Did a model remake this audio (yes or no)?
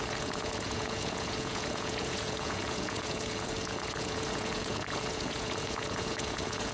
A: yes